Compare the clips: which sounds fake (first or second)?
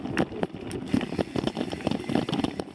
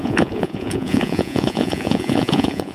second